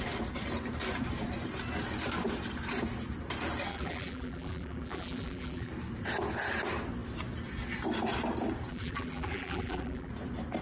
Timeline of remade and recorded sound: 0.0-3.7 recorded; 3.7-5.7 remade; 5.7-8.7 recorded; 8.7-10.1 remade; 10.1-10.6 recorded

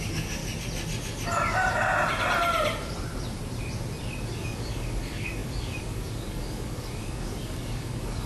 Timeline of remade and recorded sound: 0.0-0.4 remade; 0.4-4.3 recorded; 4.3-8.3 remade

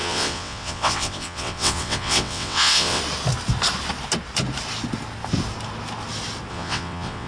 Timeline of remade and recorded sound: 0.0-3.0 remade; 3.0-6.5 recorded; 6.5-7.3 remade

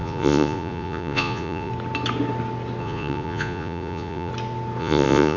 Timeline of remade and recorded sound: 0.0-1.7 remade; 1.7-2.8 recorded; 2.8-4.3 remade; 4.3-4.8 recorded; 4.8-5.4 remade